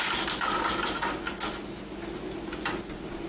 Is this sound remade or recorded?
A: recorded